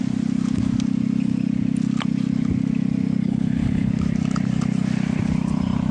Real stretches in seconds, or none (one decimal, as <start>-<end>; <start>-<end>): 0.0-3.2; 3.9-5.9

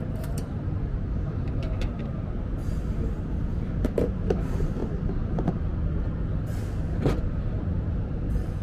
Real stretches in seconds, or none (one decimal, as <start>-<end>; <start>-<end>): 2.6-3.5; 4.8-7.2

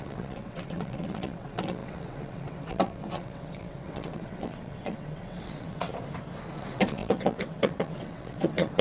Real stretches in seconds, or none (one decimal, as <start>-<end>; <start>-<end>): 5.9-6.5

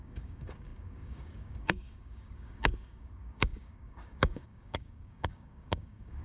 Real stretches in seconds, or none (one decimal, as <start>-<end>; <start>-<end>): none

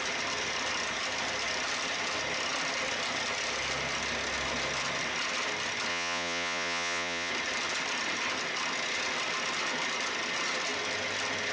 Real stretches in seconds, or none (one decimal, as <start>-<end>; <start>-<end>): 0.0-5.9; 7.3-11.5